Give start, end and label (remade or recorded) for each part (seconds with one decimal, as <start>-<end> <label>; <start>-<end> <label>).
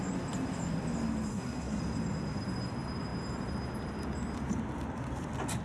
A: 0.0-1.3 recorded; 1.3-1.8 remade; 1.8-5.6 recorded